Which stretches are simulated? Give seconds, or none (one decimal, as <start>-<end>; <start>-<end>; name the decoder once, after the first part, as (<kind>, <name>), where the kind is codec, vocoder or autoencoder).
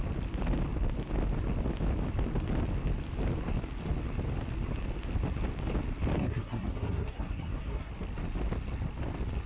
6.2-7.9 (codec, SNAC)